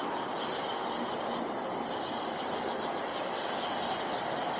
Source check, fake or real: real